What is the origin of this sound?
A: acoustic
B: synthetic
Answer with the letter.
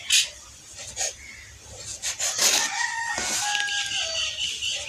A